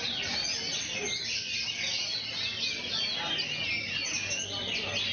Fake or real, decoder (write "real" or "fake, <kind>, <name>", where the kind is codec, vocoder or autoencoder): real